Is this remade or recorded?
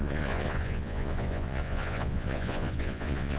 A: remade